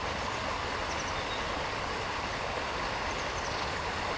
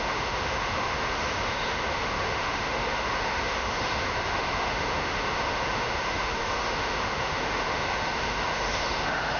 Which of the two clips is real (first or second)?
first